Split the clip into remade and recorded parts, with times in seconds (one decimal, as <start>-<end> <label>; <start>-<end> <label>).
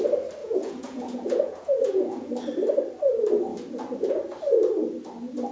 0.0-0.4 recorded; 0.4-2.3 remade; 2.3-5.5 recorded